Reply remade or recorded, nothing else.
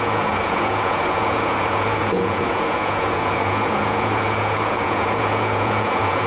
remade